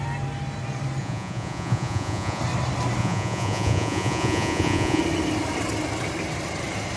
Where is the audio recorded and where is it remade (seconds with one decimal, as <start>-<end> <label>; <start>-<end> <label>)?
0.0-1.0 recorded; 1.0-2.4 remade; 2.4-3.0 recorded; 3.0-5.0 remade; 5.0-7.0 recorded